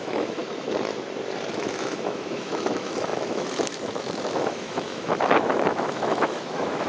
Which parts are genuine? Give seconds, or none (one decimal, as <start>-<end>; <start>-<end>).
0.4-1.5